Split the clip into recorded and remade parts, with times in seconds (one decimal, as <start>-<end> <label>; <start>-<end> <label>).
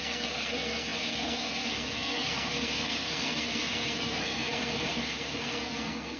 0.0-6.2 remade